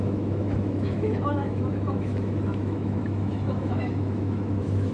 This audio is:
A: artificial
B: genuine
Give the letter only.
A